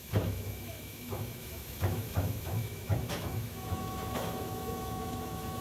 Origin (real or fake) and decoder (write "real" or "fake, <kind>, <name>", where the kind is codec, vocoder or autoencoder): fake, autoencoder, DAC-VAE